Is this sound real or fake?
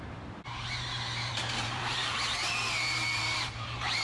fake